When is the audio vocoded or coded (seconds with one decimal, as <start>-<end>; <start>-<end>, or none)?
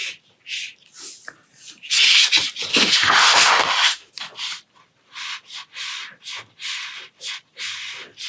2.7-4.1